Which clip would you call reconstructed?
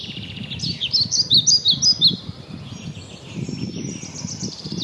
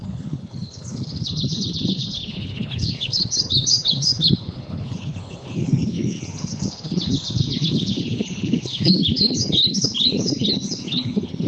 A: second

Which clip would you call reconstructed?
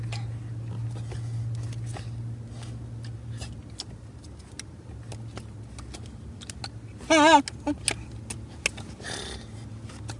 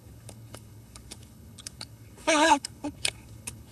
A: second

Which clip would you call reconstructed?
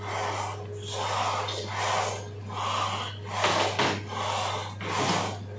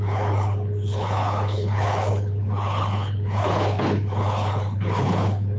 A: second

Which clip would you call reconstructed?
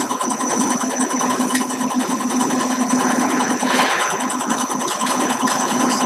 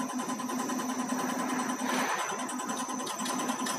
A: first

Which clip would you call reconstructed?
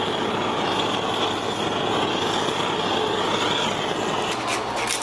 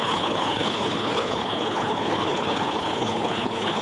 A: second